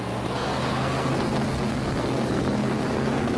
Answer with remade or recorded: remade